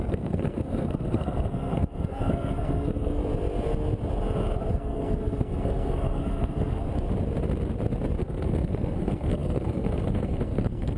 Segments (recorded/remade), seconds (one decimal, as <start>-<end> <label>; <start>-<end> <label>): 0.0-3.2 remade; 3.2-4.7 recorded; 4.7-6.9 remade; 6.9-8.2 recorded; 8.2-11.0 remade